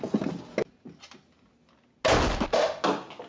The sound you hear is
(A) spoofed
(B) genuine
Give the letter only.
B